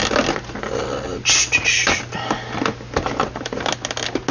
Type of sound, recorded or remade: recorded